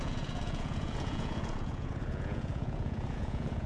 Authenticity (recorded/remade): remade